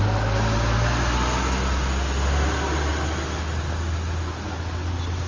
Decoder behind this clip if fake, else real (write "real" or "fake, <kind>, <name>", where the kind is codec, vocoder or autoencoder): real